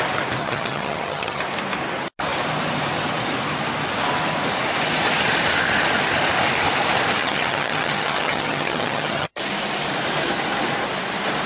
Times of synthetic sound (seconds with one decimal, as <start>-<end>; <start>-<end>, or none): 0.4-1.4; 7.2-9.4

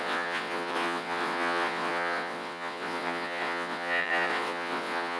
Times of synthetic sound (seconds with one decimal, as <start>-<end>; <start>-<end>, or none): 0.0-5.2

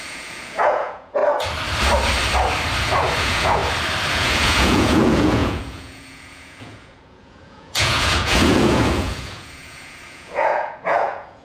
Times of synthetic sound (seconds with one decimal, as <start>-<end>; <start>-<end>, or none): 0.0-1.2; 3.2-3.6; 4.1-11.4

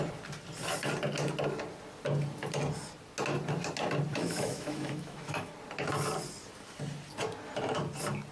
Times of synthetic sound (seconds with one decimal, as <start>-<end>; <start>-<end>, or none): 4.1-5.5

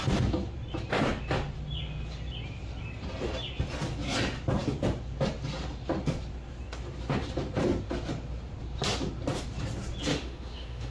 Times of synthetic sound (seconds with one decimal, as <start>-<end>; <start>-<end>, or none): 10.1-10.9